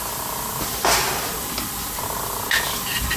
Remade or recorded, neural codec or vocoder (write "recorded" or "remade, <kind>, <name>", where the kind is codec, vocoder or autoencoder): recorded